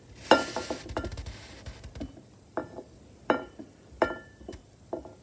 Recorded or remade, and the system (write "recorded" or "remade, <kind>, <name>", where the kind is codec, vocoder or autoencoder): recorded